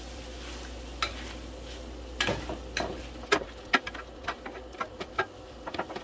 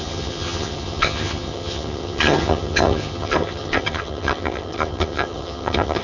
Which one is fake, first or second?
second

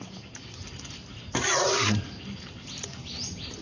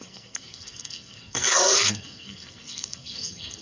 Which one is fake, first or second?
second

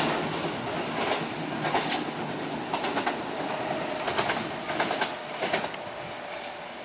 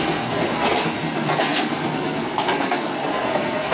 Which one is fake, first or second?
second